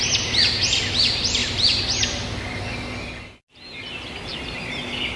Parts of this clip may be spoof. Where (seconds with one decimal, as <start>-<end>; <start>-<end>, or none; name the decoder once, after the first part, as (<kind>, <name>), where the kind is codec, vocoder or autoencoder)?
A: none

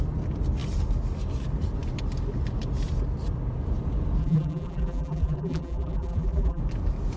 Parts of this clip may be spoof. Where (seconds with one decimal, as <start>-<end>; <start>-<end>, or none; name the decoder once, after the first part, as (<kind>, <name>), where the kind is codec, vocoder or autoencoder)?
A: 4.2-6.6 (vocoder, BigVGAN v2)